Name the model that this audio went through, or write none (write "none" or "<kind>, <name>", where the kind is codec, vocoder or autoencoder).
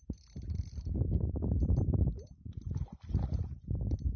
none